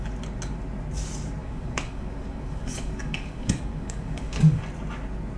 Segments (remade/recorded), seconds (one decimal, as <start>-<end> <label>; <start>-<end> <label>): 0.0-1.4 recorded; 1.4-4.6 remade; 4.6-5.4 recorded